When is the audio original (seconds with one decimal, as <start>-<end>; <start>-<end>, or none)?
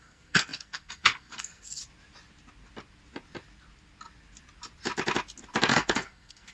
1.8-5.7